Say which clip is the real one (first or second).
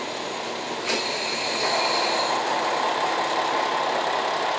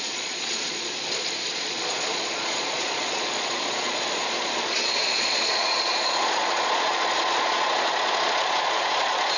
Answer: first